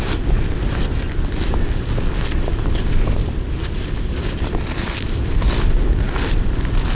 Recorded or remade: recorded